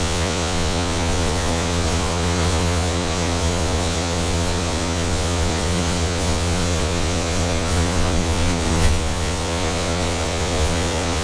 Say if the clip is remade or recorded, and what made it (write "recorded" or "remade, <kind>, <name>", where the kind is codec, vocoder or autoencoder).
remade, vocoder, Vocos